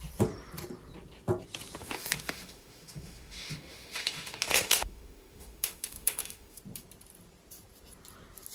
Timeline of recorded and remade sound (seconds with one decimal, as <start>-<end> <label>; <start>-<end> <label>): 0.0-1.8 recorded; 1.8-6.6 remade; 6.6-8.5 recorded

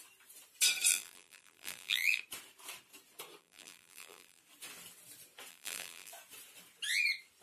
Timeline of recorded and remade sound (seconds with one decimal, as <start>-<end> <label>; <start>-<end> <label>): 0.0-0.9 recorded; 0.9-2.2 remade; 2.2-3.4 recorded; 3.4-4.4 remade; 4.4-5.5 recorded; 5.5-6.1 remade; 6.1-7.4 recorded

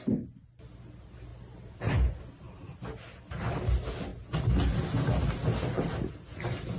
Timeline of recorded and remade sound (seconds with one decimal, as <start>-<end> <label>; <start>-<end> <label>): 0.0-6.8 recorded

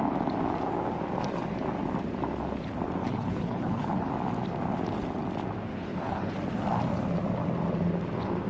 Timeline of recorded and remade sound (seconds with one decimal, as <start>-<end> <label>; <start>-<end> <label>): 0.0-3.0 recorded; 3.0-4.1 remade; 4.1-5.7 recorded; 5.7-6.3 remade; 6.3-8.5 recorded

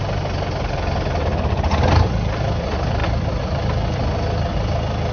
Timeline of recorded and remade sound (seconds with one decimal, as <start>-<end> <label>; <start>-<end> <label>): 0.0-3.0 recorded; 3.0-3.6 remade; 3.6-5.1 recorded

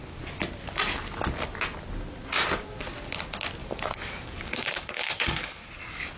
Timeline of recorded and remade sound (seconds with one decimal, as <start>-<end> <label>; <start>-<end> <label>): 0.0-3.6 recorded; 3.6-5.7 remade; 5.7-6.2 recorded